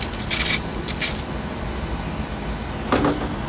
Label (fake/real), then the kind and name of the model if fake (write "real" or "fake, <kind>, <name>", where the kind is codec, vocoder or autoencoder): real